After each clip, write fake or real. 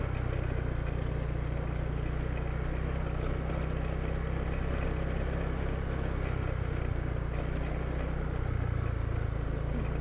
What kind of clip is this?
real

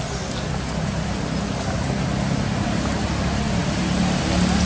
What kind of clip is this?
real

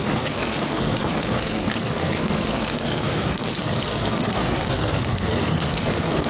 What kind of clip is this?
fake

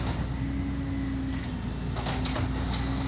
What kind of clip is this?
real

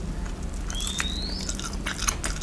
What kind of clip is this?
real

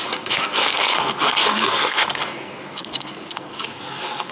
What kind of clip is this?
fake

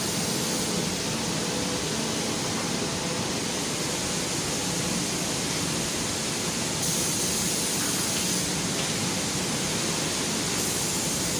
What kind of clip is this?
real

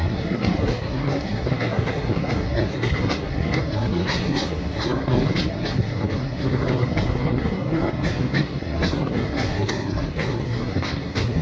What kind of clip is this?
fake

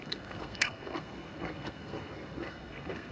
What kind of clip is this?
fake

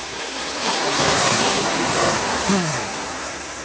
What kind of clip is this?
fake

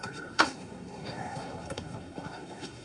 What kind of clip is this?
fake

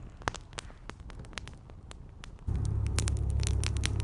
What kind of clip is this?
real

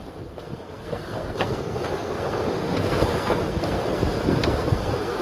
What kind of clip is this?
fake